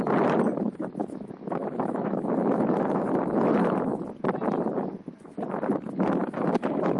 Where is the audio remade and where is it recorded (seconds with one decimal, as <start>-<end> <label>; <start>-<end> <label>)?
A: 0.0-1.0 recorded; 1.0-4.1 remade; 4.1-6.2 recorded; 6.2-7.0 remade